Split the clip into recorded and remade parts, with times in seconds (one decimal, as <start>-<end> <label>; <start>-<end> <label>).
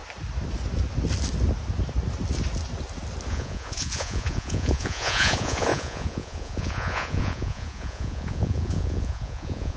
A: 0.0-3.3 recorded; 3.3-9.8 remade